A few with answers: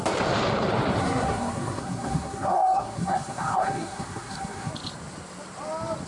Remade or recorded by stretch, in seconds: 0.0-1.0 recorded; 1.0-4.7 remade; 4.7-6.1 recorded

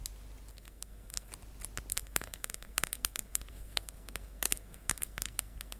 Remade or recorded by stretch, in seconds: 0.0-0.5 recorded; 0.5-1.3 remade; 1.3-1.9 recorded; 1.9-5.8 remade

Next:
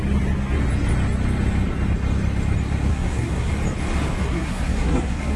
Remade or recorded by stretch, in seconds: 0.0-2.9 recorded; 2.9-3.5 remade; 3.5-4.2 recorded; 4.2-5.4 remade

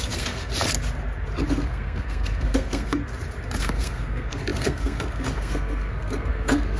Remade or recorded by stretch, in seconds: 0.0-0.5 remade; 0.5-1.5 recorded; 1.5-3.0 remade; 3.0-3.6 recorded; 3.6-6.8 remade